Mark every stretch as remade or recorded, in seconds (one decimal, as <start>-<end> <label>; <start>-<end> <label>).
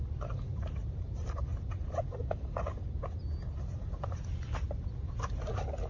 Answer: 0.0-5.9 recorded